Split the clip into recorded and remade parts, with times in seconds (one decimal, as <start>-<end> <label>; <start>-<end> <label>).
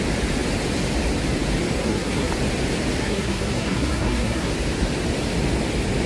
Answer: 0.0-1.8 recorded; 1.8-2.3 remade; 2.3-3.0 recorded; 3.0-4.5 remade; 4.5-6.1 recorded